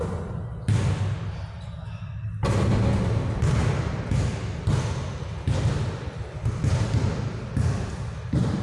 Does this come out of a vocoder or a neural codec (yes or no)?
no